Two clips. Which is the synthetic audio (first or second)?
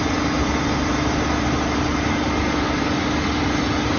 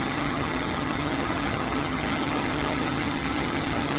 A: second